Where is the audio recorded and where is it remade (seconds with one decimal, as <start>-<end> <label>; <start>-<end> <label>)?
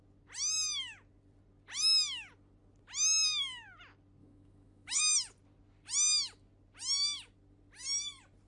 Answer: 0.0-4.2 recorded; 4.2-5.0 remade; 5.0-8.5 recorded